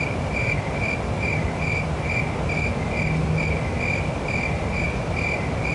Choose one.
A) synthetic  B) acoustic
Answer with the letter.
B